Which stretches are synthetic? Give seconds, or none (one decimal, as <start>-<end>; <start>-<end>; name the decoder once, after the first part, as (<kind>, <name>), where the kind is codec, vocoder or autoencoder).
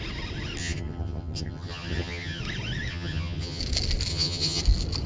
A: 0.6-2.4 (vocoder, HiFi-GAN); 2.9-3.6; 4.1-4.6